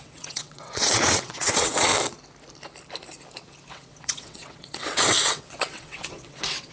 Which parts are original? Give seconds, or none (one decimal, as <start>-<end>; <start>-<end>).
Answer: 1.9-3.7